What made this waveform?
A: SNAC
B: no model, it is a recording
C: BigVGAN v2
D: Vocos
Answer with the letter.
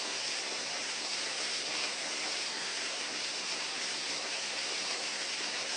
A